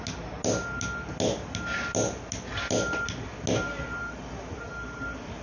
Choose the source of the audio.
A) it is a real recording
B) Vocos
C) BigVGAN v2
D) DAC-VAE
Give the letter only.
A